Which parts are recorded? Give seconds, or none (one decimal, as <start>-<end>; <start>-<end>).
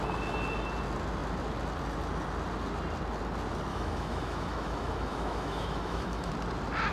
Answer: 0.0-3.7; 6.3-6.9